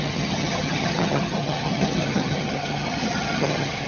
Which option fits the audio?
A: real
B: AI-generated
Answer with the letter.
B